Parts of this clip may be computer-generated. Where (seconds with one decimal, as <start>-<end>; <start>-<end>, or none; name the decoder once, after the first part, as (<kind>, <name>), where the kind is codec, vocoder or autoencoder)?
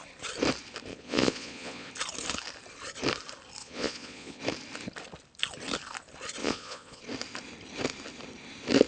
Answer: 0.9-1.9 (vocoder, Vocos); 3.6-4.4; 6.4-7.0